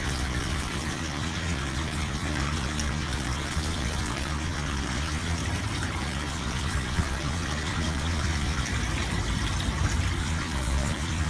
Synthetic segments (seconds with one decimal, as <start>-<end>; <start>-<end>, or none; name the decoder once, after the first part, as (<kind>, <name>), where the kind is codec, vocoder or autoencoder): 0.0-5.4 (vocoder, Vocos); 6.0-8.7; 10.2-11.3